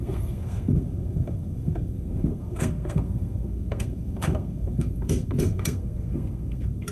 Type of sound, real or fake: fake